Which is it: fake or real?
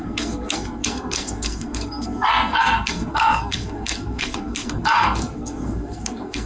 fake